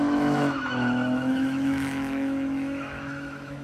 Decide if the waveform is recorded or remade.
remade